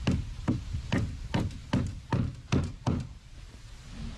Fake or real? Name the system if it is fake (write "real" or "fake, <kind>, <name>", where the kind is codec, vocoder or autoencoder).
real